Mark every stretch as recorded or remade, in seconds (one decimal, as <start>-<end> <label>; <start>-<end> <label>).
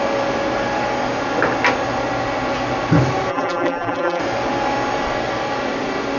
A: 0.0-3.3 recorded; 3.3-4.2 remade; 4.2-6.2 recorded